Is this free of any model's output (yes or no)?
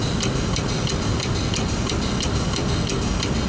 yes